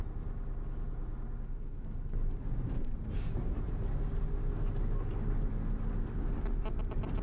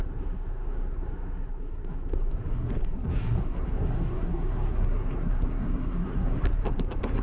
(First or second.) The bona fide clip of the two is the first